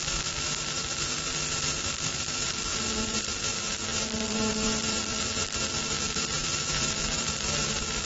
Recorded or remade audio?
remade